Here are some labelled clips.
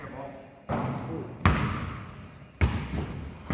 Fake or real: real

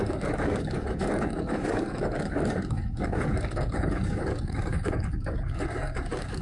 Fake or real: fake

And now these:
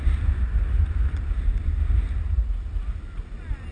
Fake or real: real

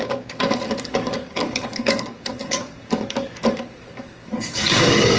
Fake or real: fake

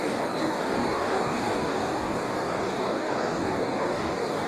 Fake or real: fake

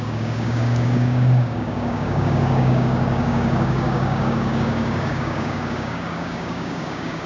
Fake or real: fake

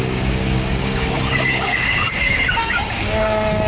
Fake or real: fake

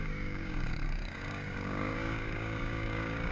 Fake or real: fake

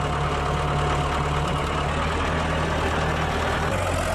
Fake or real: real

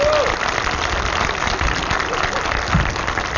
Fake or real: real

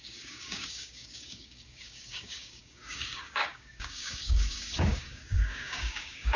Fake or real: fake